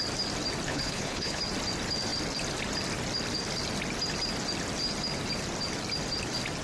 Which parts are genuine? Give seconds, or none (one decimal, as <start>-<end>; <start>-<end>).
0.0-0.7; 1.4-6.6